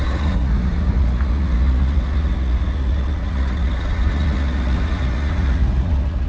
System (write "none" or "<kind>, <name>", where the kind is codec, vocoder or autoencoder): vocoder, Vocos